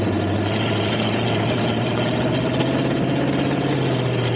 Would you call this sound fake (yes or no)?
no